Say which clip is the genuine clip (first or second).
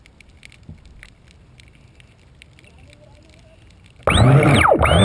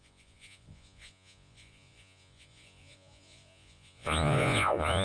first